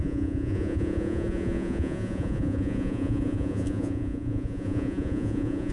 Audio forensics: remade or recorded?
remade